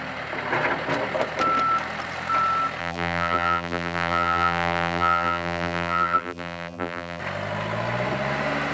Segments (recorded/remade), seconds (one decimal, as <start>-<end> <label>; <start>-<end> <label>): 0.0-2.8 recorded; 2.8-7.2 remade; 7.2-8.7 recorded